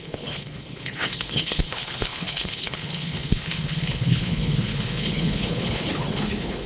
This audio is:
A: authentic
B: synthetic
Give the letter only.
B